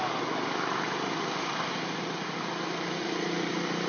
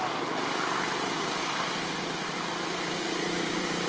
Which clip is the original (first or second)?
first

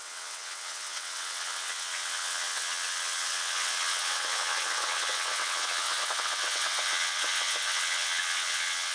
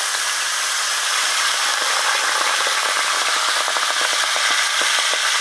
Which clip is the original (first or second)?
second